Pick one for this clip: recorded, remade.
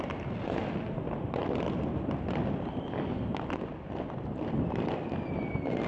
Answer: recorded